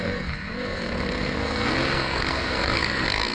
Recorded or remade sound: remade